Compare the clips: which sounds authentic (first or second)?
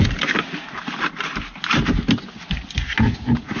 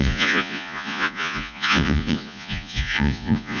first